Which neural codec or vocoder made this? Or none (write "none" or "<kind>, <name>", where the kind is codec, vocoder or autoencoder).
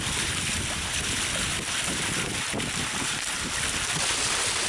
none